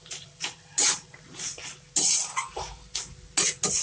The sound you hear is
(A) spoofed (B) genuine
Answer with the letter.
B